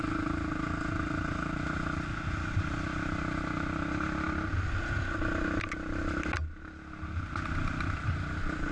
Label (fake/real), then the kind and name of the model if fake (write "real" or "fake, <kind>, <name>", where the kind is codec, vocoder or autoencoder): real